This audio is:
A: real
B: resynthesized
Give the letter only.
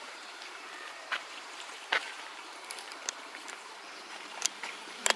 B